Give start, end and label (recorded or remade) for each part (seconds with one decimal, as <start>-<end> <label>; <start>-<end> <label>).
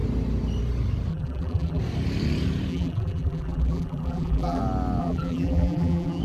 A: 0.0-1.1 recorded; 1.1-1.8 remade; 1.8-2.7 recorded; 2.7-4.6 remade; 4.6-5.0 recorded; 5.0-6.2 remade